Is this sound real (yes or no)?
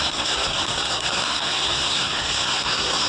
no